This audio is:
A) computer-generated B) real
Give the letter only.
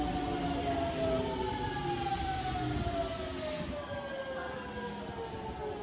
B